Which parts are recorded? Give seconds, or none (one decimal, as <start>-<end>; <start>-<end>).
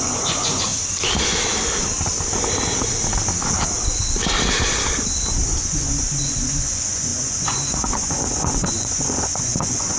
0.7-5.6